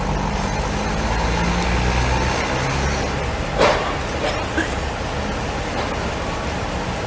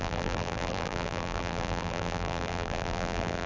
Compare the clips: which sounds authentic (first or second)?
first